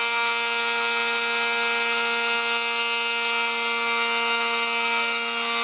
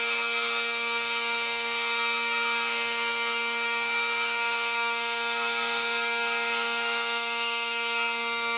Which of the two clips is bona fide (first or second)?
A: first